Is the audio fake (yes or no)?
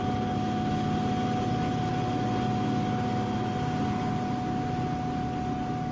no